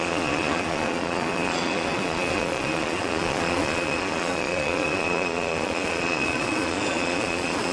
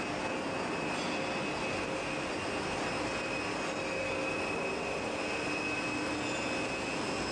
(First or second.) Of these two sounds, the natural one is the second